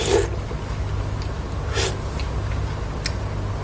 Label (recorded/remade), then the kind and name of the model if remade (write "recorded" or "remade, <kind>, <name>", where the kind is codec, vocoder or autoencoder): recorded